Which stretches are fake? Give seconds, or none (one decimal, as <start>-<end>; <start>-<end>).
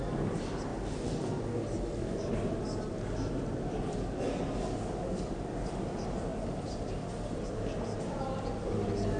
none